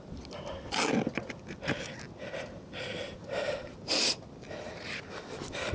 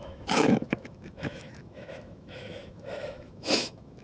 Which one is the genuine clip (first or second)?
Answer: first